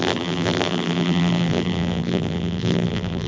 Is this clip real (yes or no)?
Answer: no